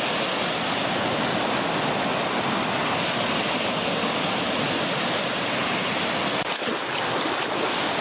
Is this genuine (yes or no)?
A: yes